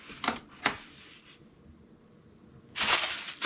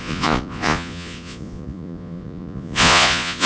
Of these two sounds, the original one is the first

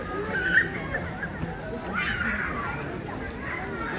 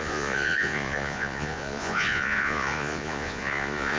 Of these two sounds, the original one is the first